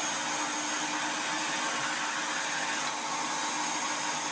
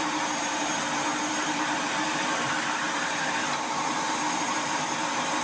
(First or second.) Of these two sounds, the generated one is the second